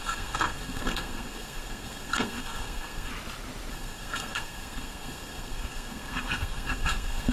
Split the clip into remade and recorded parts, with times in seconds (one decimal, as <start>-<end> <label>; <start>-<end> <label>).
0.0-3.1 remade; 3.1-3.7 recorded; 3.7-7.3 remade